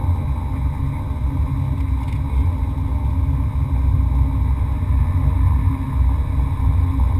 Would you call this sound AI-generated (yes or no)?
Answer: no